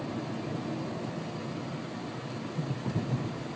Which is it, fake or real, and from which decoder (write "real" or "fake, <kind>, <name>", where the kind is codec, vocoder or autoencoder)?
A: real